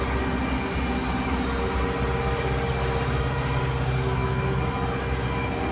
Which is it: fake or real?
real